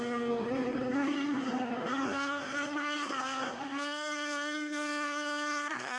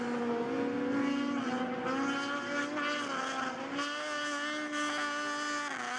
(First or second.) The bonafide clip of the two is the second